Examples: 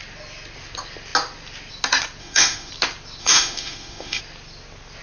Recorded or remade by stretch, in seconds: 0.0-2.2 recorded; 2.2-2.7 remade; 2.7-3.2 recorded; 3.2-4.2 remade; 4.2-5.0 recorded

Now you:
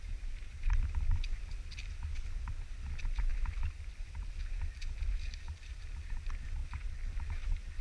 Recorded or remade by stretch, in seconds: 0.0-7.8 recorded